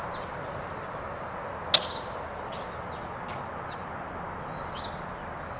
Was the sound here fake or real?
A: real